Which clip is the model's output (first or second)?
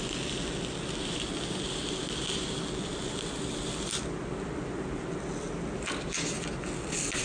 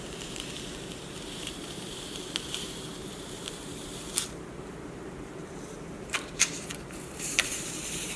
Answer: second